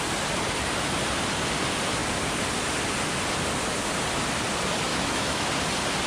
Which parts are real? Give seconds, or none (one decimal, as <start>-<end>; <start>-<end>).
0.0-4.9; 5.5-6.1